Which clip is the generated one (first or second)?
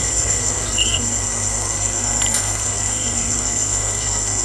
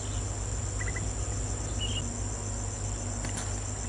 first